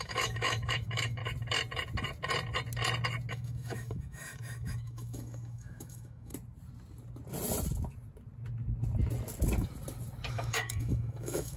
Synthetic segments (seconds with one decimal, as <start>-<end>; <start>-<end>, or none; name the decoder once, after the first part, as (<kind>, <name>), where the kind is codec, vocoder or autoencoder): 0.0-1.2 (autoencoder, DAC-VAE); 3.3-6.3; 10.3-11.6